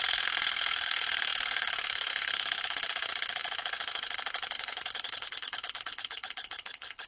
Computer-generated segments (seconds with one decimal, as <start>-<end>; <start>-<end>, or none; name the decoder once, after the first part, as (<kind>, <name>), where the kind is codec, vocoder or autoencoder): 0.0-7.1 (codec, HILCodec)